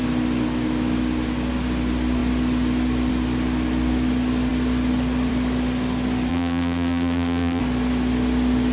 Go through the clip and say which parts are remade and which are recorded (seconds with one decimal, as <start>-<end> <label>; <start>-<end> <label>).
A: 0.0-6.3 recorded; 6.3-7.6 remade; 7.6-8.7 recorded